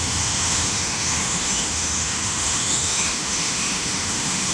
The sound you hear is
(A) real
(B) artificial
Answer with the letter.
B